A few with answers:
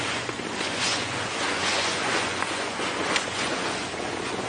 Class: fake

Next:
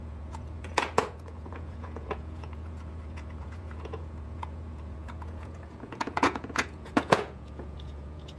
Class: fake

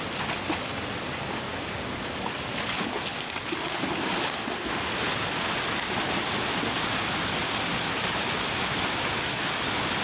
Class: real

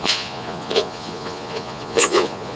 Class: fake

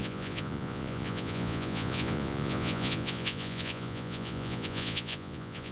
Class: fake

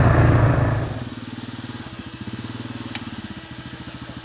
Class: real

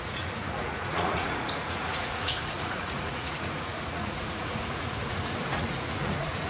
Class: fake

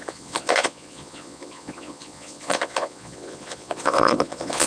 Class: fake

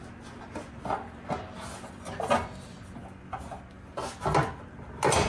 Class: real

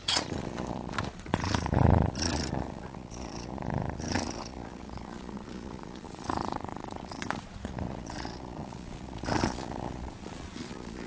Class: fake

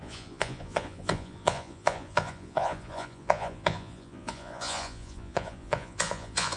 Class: fake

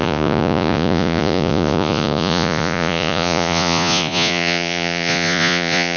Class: fake